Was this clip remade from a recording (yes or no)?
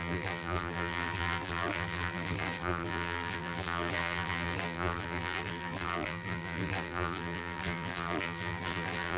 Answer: yes